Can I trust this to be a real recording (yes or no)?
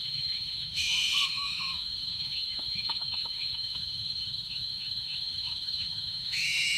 no